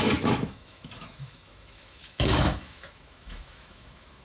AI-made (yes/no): yes